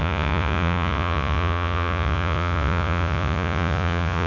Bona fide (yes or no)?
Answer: no